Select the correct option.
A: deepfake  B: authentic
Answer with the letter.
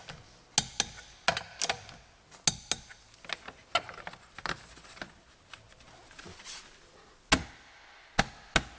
B